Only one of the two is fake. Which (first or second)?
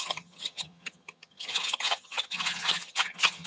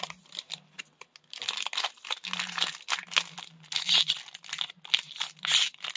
first